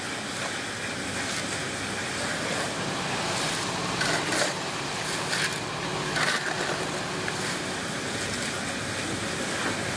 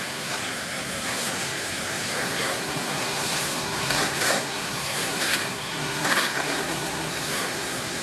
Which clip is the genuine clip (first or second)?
first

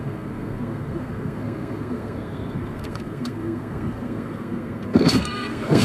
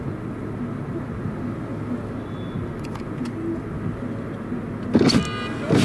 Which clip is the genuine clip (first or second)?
second